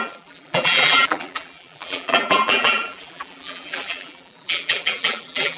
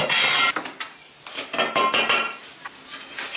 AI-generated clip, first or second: first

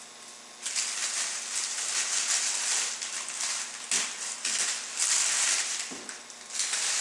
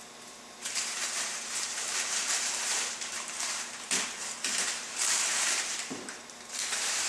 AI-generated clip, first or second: second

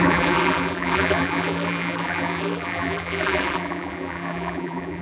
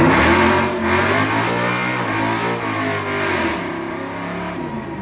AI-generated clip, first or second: first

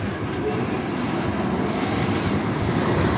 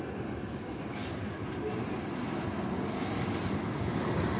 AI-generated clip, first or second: first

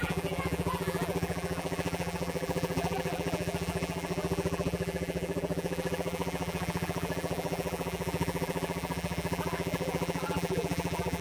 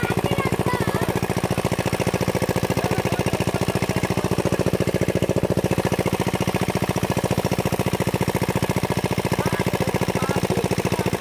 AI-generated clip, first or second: first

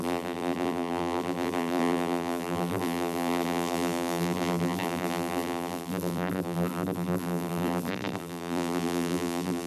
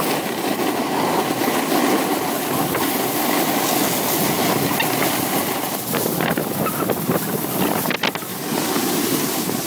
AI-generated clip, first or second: first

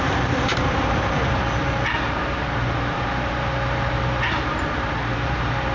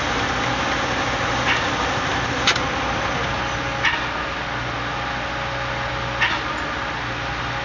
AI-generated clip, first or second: first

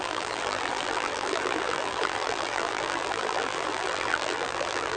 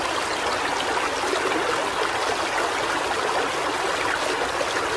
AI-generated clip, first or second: first